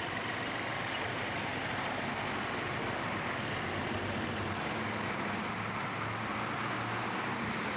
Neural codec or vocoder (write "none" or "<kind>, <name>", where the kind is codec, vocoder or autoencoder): none